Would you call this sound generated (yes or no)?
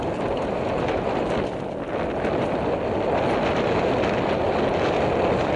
no